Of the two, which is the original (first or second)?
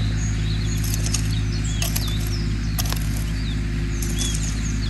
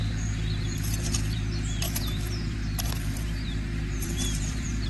first